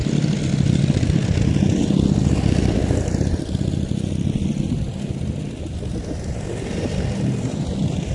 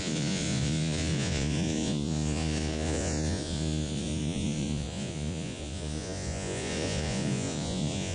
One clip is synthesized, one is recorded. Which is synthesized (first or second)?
second